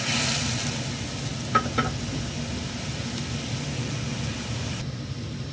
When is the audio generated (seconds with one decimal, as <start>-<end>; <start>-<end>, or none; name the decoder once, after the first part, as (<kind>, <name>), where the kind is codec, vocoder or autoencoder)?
none